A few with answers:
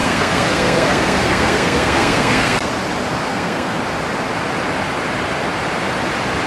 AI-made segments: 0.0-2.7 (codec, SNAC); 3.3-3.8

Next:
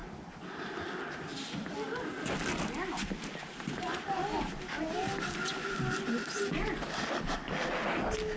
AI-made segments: none